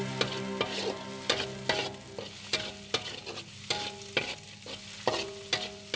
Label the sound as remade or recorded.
recorded